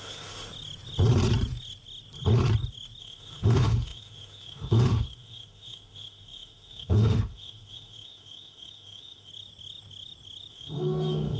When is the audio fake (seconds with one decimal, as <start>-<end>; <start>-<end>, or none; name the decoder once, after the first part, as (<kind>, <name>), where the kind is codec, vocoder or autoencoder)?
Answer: 0.0-0.5 (autoencoder, DAC-VAE); 3.0-9.3; 10.5-11.4